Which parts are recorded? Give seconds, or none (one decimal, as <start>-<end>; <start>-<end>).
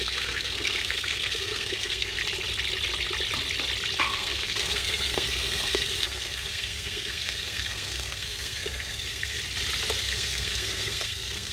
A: 2.2-4.0; 9.4-10.0